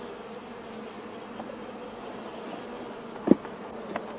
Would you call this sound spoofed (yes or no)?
no